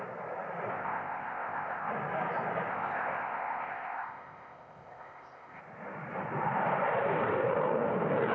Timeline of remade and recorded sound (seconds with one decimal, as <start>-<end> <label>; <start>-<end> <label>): 0.0-0.7 recorded; 0.7-1.9 remade; 1.9-2.7 recorded; 2.7-5.6 remade; 5.6-8.3 recorded

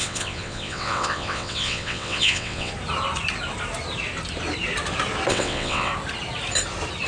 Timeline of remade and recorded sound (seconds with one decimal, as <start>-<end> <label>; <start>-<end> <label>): 0.0-2.7 remade; 2.7-5.3 recorded; 5.3-5.9 remade; 5.9-7.1 recorded

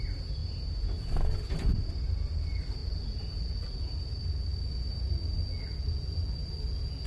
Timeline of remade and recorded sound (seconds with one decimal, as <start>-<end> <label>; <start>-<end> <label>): 0.0-7.1 recorded

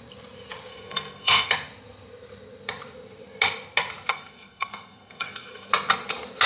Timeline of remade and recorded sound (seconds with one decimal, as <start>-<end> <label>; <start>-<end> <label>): 0.0-0.7 recorded; 0.7-1.5 remade; 1.5-4.1 recorded; 4.1-5.7 remade; 5.7-6.5 recorded

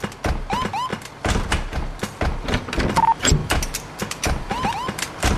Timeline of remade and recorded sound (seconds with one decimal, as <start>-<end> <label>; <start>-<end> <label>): 0.0-0.9 recorded; 0.9-1.5 remade; 1.5-3.4 recorded; 3.4-5.4 remade

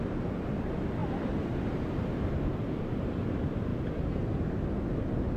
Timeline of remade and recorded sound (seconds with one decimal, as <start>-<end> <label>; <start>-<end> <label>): 0.0-5.4 recorded

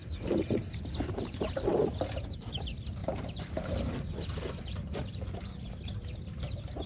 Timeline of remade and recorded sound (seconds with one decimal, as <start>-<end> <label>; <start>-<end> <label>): 0.0-3.0 recorded; 3.0-3.7 remade; 3.7-6.9 recorded

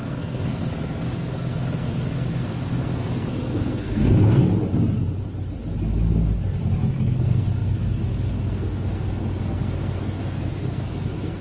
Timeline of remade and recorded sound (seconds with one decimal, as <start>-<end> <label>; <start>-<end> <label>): 0.0-4.4 remade; 4.4-6.9 recorded; 6.9-11.4 remade